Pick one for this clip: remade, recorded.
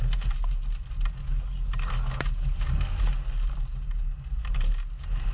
recorded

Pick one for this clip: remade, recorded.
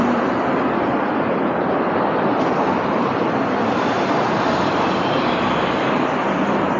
remade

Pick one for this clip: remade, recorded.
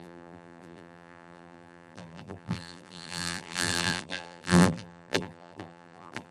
remade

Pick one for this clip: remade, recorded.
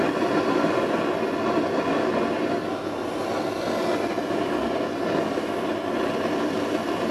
recorded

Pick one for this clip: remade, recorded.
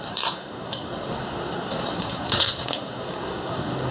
remade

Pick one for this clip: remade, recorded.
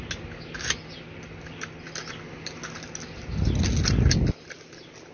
recorded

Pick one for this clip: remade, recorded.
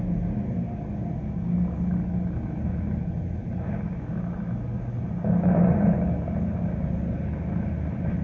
recorded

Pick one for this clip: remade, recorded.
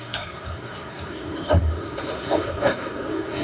remade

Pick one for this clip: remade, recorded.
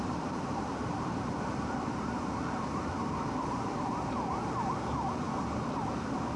remade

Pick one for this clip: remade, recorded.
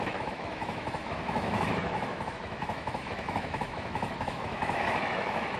remade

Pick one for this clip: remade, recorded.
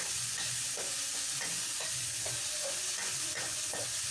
remade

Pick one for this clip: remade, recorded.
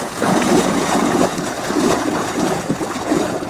remade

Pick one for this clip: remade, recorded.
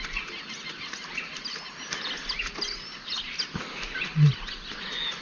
recorded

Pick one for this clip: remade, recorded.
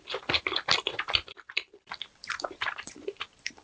remade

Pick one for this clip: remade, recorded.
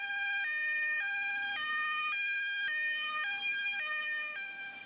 recorded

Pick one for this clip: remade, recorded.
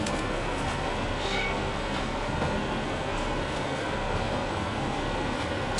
remade